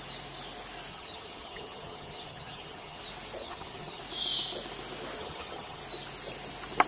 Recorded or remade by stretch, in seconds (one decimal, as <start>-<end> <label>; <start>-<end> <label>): 0.0-0.9 recorded; 0.9-3.0 remade; 3.0-3.4 recorded; 3.4-4.0 remade; 4.0-5.2 recorded; 5.2-5.8 remade; 5.8-6.9 recorded